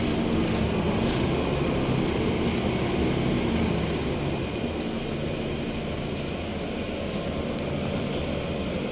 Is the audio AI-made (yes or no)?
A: no